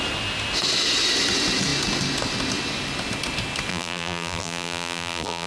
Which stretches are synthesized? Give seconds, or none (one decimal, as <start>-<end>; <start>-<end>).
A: 3.7-5.5